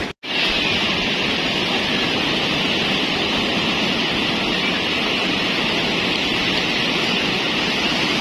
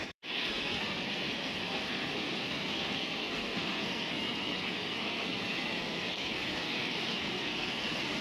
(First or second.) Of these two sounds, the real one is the first